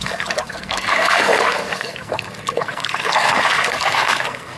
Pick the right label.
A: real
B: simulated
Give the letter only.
B